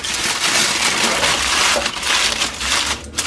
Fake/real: real